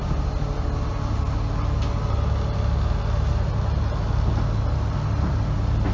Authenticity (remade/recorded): recorded